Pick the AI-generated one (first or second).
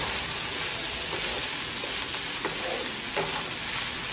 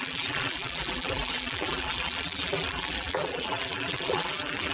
second